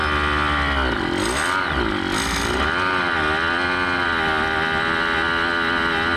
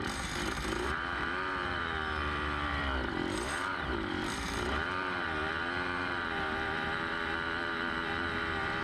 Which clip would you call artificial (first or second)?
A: second